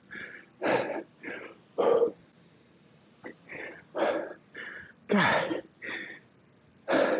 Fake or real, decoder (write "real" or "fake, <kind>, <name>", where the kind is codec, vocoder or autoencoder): real